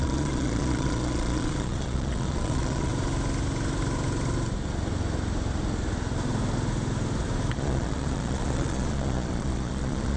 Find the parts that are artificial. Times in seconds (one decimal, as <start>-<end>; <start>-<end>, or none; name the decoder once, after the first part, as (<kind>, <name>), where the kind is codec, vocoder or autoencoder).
0.0-2.9 (vocoder, Vocos); 7.5-10.2